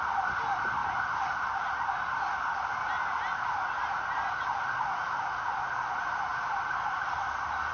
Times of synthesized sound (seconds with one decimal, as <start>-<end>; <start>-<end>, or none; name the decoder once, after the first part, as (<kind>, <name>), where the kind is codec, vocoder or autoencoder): 6.3-7.3 (vocoder, BigVGAN v2)